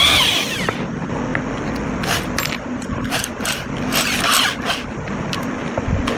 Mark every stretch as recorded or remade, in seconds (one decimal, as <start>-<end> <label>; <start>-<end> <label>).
0.0-6.2 recorded